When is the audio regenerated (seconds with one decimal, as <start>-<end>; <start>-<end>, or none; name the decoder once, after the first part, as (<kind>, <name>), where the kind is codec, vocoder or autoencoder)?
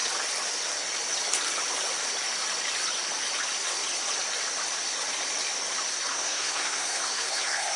6.1-7.8 (codec, SNAC)